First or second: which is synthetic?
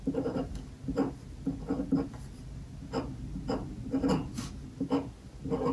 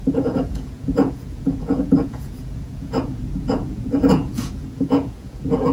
second